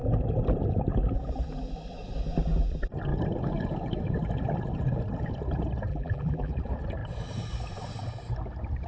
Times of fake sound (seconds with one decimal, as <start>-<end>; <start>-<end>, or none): 5.9-6.5